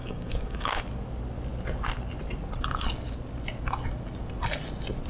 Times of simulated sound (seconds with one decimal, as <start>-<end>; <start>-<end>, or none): 0.0-0.8